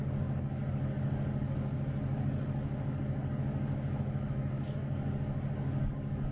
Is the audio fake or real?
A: fake